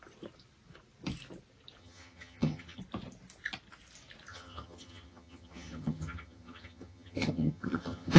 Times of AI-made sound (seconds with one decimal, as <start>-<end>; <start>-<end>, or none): 1.8-2.8; 4.3-8.2